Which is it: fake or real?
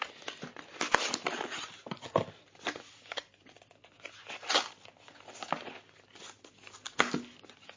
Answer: real